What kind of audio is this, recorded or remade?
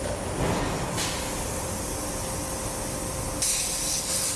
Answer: recorded